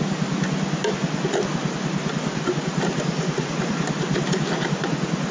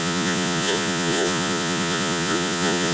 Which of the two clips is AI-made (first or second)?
second